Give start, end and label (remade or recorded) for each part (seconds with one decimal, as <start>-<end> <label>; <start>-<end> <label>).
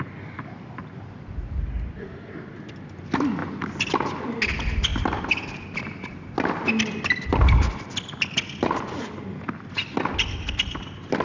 0.0-11.2 recorded